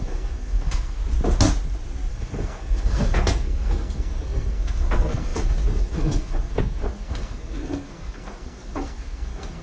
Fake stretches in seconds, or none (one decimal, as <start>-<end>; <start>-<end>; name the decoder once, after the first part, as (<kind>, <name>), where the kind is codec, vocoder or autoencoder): 0.0-1.0 (codec, SNAC); 2.1-9.6